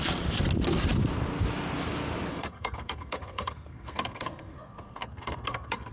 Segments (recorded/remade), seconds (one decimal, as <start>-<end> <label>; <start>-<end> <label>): 0.0-2.3 recorded; 2.3-5.9 remade